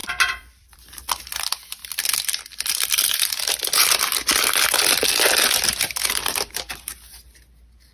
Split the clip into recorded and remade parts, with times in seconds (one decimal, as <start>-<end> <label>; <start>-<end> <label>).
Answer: 0.0-1.0 remade; 1.0-1.8 recorded; 1.8-6.5 remade; 6.5-7.9 recorded

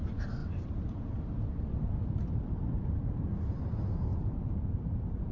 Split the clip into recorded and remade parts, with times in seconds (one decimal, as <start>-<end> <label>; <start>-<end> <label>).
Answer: 0.0-5.3 remade

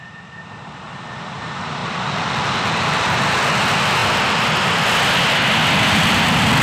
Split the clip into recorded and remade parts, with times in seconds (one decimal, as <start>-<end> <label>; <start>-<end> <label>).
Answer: 0.0-1.8 recorded; 1.8-3.2 remade; 3.2-6.6 recorded

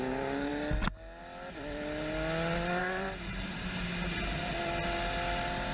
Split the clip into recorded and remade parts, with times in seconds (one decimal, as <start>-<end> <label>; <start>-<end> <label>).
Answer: 0.0-2.8 recorded; 2.8-3.8 remade; 3.8-5.7 recorded

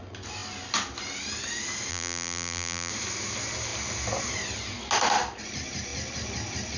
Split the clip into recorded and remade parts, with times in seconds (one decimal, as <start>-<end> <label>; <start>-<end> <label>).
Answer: 0.0-1.9 recorded; 1.9-2.9 remade; 2.9-6.8 recorded